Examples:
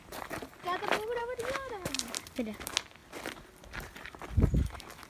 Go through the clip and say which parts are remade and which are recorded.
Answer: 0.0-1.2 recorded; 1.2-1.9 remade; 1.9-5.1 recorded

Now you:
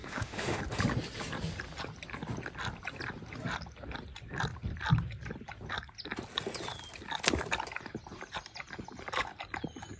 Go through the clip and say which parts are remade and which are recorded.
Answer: 0.0-0.6 remade; 0.6-10.0 recorded

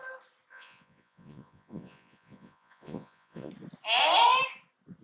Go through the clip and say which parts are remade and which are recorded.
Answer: 0.0-0.5 recorded; 0.5-3.5 remade; 3.5-5.0 recorded

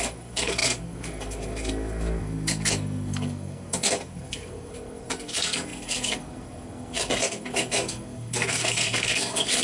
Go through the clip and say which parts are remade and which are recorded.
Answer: 0.0-9.6 remade